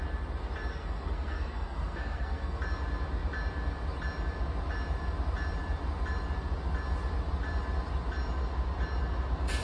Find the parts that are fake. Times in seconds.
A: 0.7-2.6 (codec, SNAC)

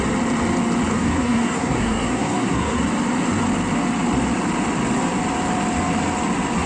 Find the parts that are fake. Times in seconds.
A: 0.9-2.8 (codec, SNAC)

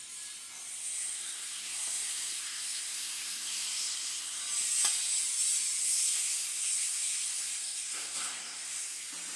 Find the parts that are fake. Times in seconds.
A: 0.8-4.4 (codec, SNAC); 5.8-9.0

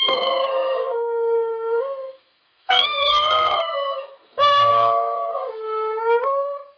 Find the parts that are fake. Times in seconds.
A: 0.0-6.8 (codec, SNAC)